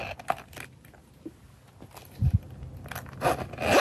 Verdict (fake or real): real